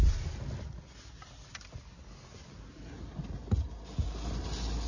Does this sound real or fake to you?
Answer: real